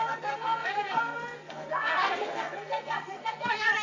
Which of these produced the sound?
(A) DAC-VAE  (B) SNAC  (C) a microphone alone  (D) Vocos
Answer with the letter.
B